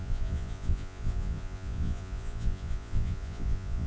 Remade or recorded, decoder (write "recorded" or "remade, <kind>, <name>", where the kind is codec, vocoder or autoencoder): remade, vocoder, Vocos